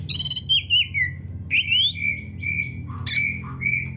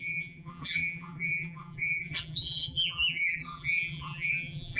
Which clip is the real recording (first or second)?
first